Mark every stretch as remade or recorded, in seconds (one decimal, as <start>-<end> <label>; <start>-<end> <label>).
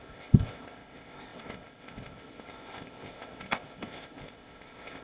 0.0-5.0 remade